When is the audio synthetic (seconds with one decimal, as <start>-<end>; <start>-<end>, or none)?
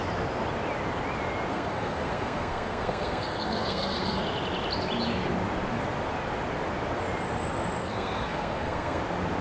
1.5-4.2; 7.8-9.0